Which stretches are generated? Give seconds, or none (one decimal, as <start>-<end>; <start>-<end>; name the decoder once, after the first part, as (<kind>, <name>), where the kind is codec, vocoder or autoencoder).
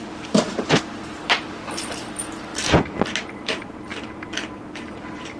0.0-2.5 (vocoder, BigVGAN v2); 3.4-5.4